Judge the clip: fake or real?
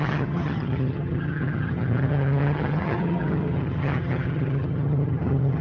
fake